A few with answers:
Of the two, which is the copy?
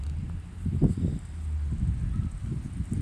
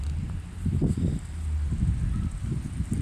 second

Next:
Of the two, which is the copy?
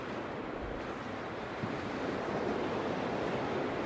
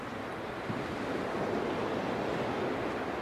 first